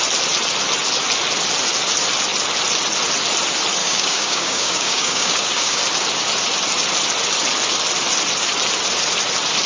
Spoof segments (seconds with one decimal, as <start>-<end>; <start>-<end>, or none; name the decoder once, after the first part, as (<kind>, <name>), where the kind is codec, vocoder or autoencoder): 3.8-5.8 (codec, DAC)